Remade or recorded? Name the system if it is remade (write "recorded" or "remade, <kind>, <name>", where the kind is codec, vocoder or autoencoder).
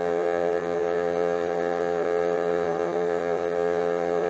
remade, vocoder, HiFi-GAN